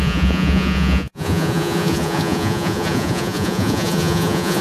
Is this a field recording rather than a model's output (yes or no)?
no